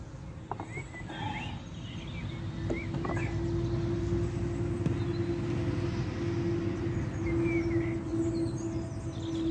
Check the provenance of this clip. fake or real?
real